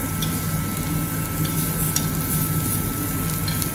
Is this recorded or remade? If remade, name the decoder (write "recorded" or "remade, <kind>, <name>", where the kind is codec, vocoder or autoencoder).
recorded